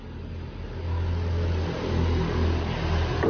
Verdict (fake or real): real